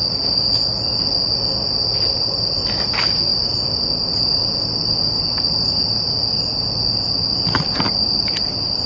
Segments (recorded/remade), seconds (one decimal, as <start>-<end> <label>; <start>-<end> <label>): 0.0-8.9 recorded